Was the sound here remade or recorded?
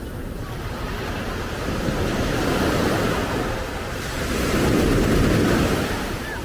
recorded